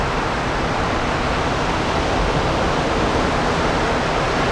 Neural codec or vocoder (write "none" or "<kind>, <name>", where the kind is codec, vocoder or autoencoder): none